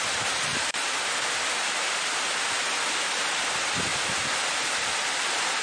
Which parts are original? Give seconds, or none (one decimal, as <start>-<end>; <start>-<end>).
0.0-5.6